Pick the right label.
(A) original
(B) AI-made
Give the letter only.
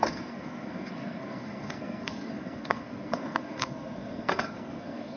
B